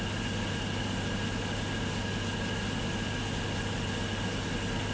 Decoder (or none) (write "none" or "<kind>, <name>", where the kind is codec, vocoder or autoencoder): none